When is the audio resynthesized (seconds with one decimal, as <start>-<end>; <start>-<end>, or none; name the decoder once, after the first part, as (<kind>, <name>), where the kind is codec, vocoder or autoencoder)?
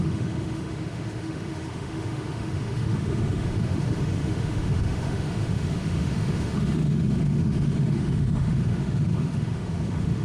0.0-10.2 (autoencoder, DAC-VAE)